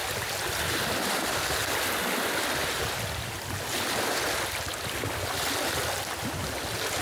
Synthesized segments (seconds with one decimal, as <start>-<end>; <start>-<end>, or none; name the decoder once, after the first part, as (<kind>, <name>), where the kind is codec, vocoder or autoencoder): none